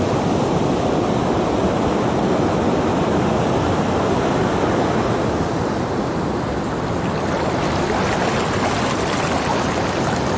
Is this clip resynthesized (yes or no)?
no